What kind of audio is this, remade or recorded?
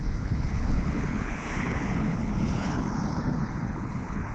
remade